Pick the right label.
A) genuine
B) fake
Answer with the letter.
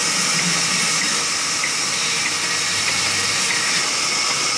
A